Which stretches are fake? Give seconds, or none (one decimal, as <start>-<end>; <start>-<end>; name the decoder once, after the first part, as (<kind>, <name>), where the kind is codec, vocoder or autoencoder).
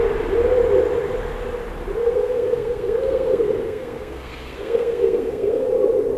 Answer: 2.0-5.7 (codec, SNAC)